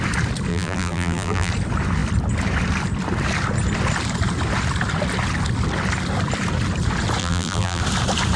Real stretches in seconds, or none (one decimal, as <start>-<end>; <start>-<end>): 0.0-0.5; 1.5-7.2; 7.8-8.4